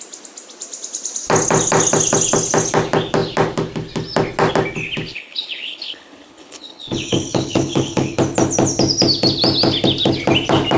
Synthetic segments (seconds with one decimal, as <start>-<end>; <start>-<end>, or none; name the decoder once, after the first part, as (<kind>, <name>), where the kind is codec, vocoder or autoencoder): 5.1-8.2 (codec, HILCodec)